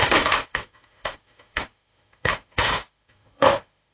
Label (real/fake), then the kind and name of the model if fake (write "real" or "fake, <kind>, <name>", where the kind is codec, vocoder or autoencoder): fake, autoencoder, DAC-VAE